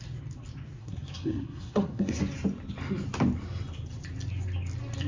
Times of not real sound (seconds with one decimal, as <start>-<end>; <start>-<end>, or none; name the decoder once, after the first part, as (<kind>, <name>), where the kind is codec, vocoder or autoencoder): 0.8-2.2 (codec, SNAC)